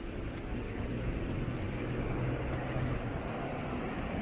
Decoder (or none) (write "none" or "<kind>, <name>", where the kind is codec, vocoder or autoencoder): none